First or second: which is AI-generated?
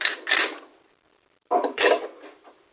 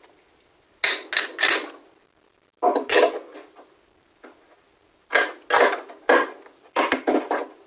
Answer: first